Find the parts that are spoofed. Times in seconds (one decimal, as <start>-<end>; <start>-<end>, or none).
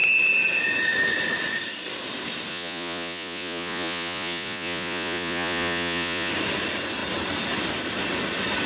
2.5-6.3